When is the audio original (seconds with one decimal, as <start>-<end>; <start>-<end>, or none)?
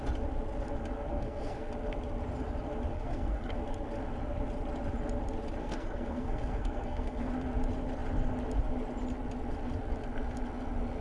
0.0-1.1; 1.7-2.9; 3.6-5.6; 7.3-11.0